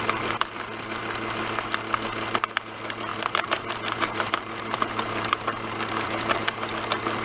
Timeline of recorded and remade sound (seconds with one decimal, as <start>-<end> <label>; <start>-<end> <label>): 0.0-3.1 recorded; 3.1-6.7 remade; 6.7-7.2 recorded